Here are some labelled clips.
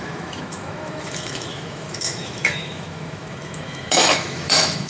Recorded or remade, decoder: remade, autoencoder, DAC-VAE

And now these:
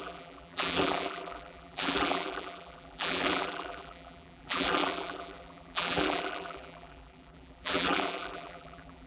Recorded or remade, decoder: remade, vocoder, BigVGAN v2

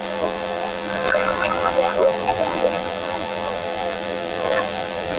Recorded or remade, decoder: remade, vocoder, BigVGAN v2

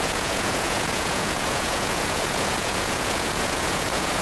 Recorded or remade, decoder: remade, vocoder, Vocos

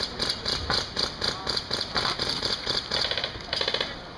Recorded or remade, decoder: recorded